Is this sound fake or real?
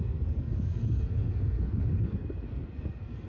fake